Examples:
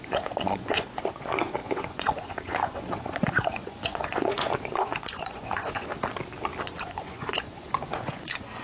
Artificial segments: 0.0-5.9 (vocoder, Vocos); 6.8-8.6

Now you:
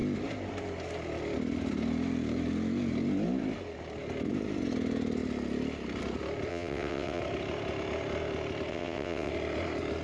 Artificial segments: 6.5-7.2 (vocoder, WaveNeXt); 8.7-9.3

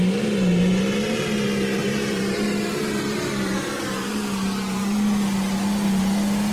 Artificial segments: 1.8-2.8 (vocoder, BigVGAN v2)

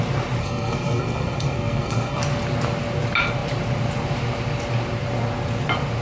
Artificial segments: 0.4-2.2 (codec, SNAC)

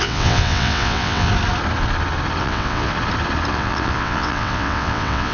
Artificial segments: 0.0-1.3 (vocoder, WaveNeXt); 2.4-2.9; 3.5-5.3

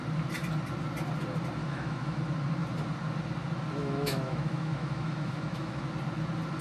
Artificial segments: 1.6-2.2 (autoencoder, DAC-VAE); 3.8-5.8

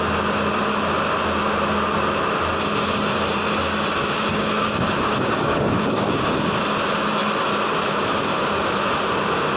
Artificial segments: 4.3-6.3 (codec, DAC)